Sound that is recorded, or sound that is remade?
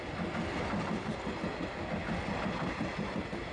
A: recorded